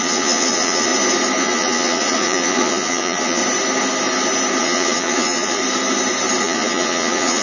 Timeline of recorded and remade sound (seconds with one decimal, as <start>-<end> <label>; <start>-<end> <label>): 0.0-0.9 remade; 0.9-1.4 recorded; 1.4-3.4 remade; 3.4-4.6 recorded; 4.6-5.6 remade; 5.6-6.4 recorded; 6.4-7.4 remade